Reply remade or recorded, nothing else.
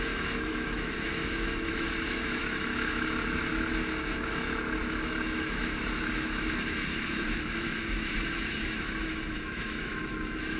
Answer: remade